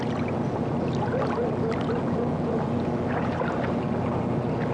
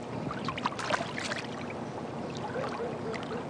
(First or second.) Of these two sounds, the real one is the first